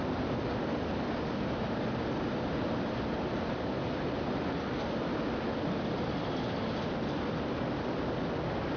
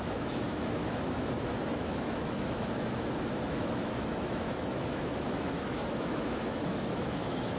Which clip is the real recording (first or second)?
first